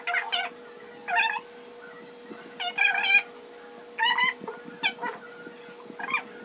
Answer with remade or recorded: recorded